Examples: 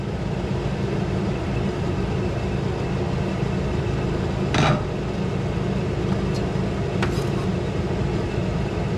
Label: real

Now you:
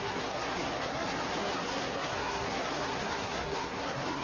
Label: fake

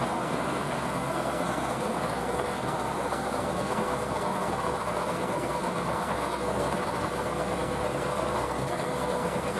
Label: fake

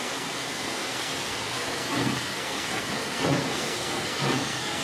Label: fake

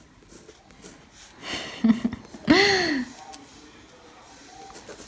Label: real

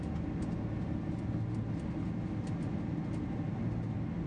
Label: real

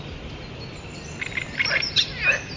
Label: real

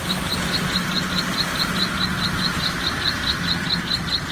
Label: real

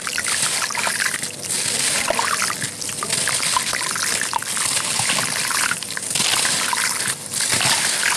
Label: real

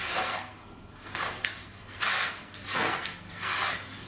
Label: fake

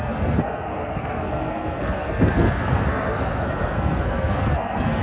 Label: fake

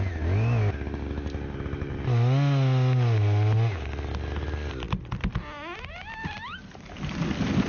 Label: real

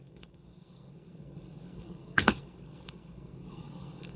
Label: fake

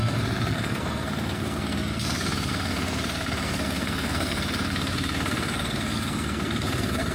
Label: fake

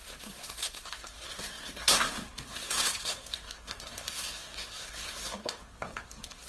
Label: fake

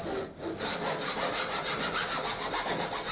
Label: real